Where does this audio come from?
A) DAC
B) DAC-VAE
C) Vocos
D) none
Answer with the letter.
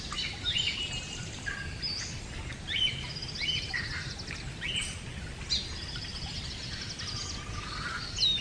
D